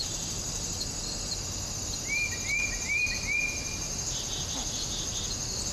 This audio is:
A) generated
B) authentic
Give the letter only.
B